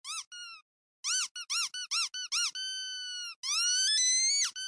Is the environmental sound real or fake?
real